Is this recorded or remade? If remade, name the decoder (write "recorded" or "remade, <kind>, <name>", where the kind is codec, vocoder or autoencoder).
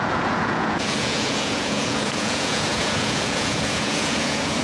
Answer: remade, vocoder, Vocos